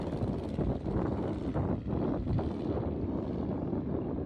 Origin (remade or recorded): recorded